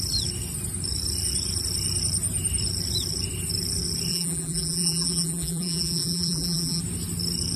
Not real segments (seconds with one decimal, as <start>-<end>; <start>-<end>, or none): 4.1-6.8